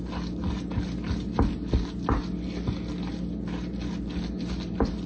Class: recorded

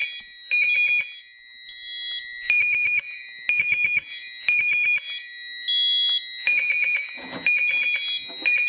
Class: recorded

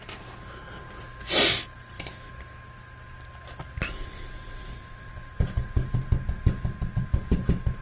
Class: recorded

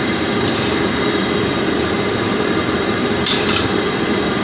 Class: remade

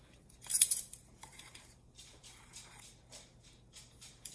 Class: remade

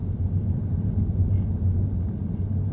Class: recorded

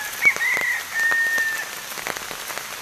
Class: recorded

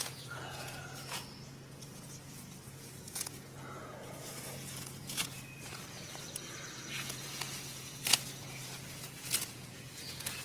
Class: remade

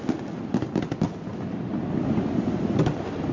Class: recorded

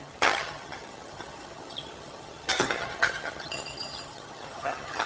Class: remade